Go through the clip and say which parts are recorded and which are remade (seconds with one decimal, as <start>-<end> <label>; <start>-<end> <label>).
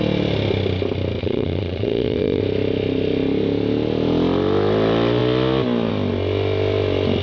0.0-1.2 recorded; 1.2-2.4 remade; 2.4-7.2 recorded